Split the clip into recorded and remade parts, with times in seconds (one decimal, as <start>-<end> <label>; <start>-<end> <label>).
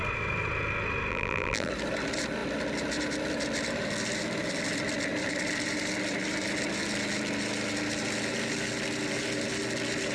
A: 0.0-1.1 recorded; 1.1-1.7 remade; 1.7-10.1 recorded